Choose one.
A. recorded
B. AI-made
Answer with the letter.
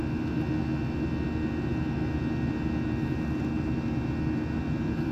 A